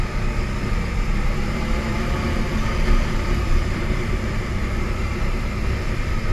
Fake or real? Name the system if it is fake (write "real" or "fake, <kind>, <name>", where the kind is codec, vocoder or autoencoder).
fake, vocoder, BigVGAN v2